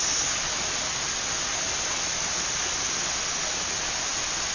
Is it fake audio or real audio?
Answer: real